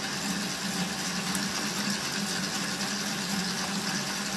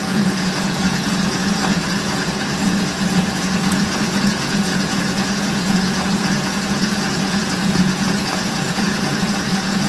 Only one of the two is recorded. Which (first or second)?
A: first